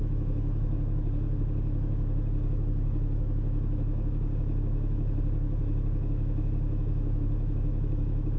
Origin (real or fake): fake